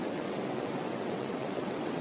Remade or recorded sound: remade